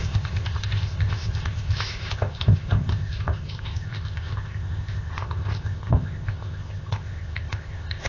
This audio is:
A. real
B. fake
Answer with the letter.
B